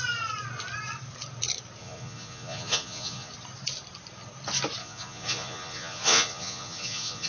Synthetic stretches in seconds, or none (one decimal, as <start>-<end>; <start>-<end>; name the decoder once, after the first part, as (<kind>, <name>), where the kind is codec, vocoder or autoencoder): 1.8-3.3 (vocoder, Vocos); 4.8-7.3